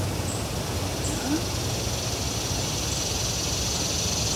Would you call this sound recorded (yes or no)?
yes